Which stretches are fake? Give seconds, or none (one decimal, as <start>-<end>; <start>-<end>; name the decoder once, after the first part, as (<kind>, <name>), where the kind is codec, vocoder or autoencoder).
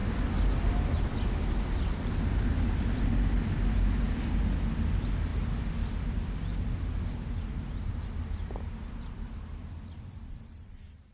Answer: none